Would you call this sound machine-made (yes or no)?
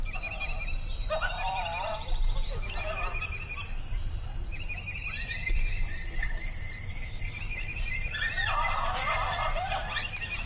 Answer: yes